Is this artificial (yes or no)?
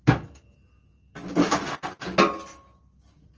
no